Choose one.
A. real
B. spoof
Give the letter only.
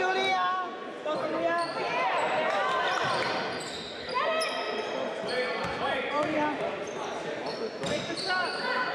A